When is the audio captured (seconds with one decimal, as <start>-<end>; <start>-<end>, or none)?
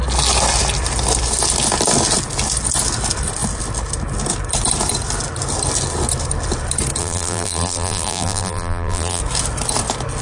0.0-7.0; 9.2-10.2